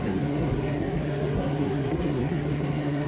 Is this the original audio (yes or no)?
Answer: no